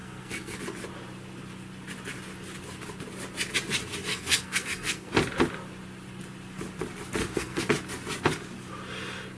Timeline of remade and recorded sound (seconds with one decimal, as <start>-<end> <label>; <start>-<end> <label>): 0.0-0.6 remade; 0.6-4.1 recorded; 4.1-5.1 remade; 5.1-7.2 recorded; 7.2-7.7 remade; 7.7-9.4 recorded